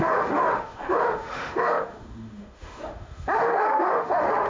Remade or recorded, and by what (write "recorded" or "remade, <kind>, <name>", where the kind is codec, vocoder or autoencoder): remade, autoencoder, DAC-VAE